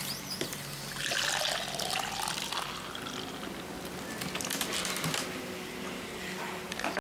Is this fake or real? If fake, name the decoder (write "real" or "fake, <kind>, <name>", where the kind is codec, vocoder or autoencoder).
real